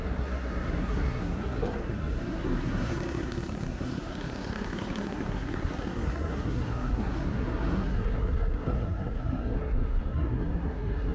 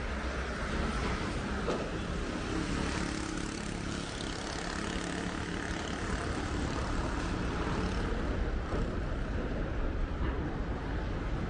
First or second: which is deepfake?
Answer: first